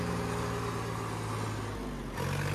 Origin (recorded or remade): recorded